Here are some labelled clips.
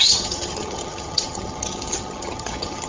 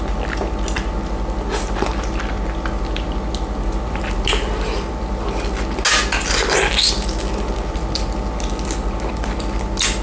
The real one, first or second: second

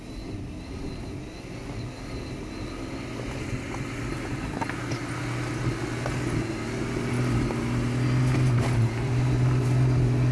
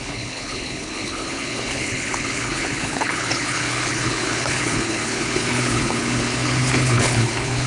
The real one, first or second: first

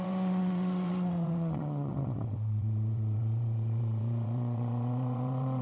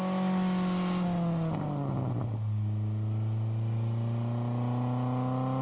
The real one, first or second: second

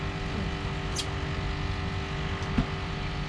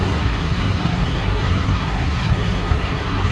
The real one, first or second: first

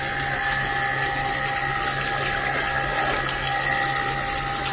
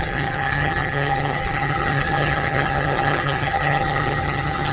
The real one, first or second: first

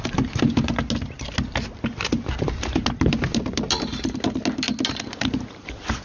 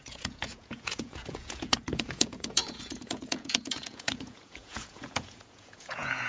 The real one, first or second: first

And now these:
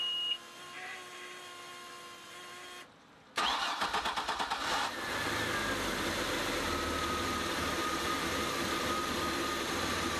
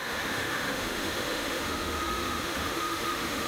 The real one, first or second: first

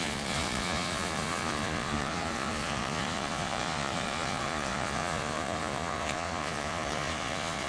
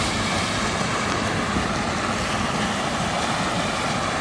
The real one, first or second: second